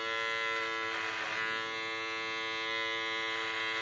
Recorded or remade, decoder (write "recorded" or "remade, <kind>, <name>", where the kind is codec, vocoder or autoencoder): recorded